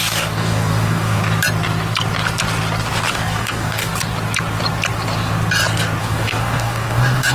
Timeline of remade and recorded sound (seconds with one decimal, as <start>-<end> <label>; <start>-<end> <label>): 0.0-1.2 remade; 1.2-3.1 recorded; 3.1-3.9 remade; 3.9-6.0 recorded; 6.0-7.3 remade